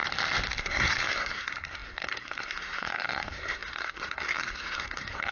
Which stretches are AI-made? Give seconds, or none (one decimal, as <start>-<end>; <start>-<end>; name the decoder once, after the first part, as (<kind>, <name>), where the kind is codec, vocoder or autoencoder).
0.6-5.3 (codec, SNAC)